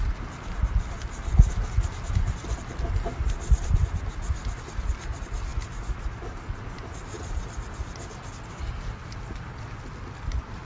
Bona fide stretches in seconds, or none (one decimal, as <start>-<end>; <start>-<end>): 0.0-10.7